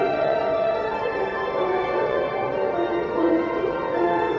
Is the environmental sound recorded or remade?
remade